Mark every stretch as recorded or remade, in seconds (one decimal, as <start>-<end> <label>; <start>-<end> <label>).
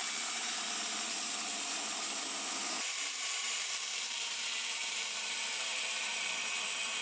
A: 0.0-7.0 remade